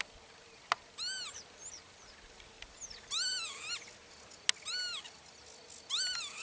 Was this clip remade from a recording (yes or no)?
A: no